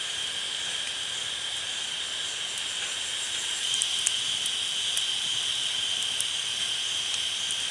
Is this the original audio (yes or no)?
yes